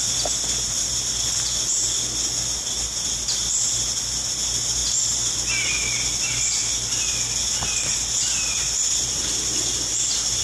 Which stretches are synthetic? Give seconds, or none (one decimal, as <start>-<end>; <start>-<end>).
none